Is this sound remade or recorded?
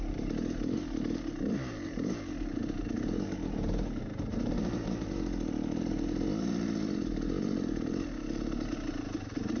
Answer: recorded